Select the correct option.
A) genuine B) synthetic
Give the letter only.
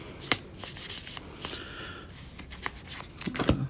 A